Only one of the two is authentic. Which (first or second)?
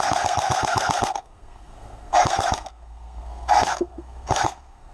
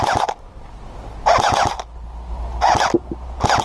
second